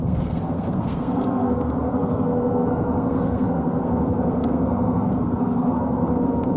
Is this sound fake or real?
fake